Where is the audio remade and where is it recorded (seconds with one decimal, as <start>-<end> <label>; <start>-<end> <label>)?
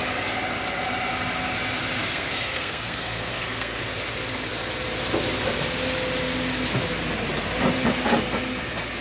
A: 0.0-2.0 recorded; 2.0-3.8 remade; 3.8-9.0 recorded